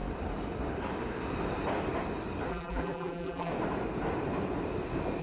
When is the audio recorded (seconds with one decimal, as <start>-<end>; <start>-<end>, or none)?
0.0-2.5; 3.5-5.2